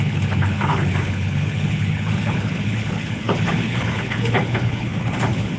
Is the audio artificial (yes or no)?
yes